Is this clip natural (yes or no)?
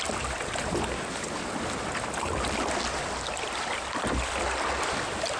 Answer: yes